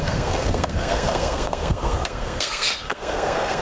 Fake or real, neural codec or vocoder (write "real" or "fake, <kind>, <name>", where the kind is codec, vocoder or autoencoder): fake, codec, SNAC